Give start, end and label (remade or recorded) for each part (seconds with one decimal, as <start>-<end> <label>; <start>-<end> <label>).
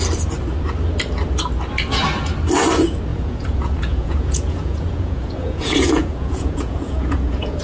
0.0-3.1 recorded; 3.1-7.6 remade